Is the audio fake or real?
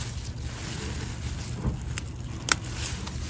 real